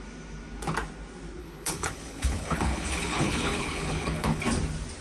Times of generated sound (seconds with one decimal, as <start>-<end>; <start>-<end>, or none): 1.4-4.4